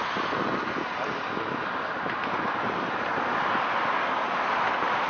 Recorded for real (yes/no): yes